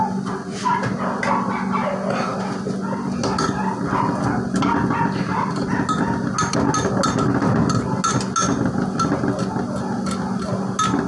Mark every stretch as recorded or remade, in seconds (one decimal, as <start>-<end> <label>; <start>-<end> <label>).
0.0-11.1 recorded